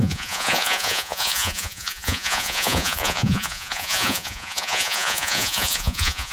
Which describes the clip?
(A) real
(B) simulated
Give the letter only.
B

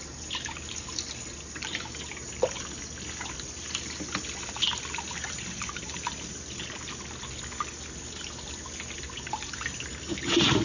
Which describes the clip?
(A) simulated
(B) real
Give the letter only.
B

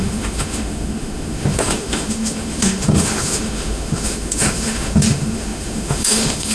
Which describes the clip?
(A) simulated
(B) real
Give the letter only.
A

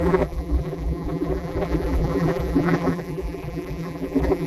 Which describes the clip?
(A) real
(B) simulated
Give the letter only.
B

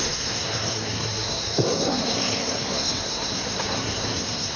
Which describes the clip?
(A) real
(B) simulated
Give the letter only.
B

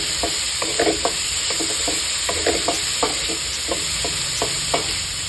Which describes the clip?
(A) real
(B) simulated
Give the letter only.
A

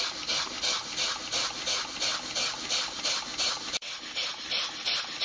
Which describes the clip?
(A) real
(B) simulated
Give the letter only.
A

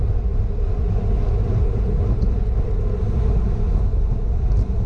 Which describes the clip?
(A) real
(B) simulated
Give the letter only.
A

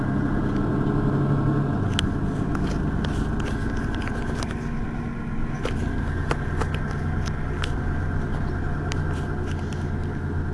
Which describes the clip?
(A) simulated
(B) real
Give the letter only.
B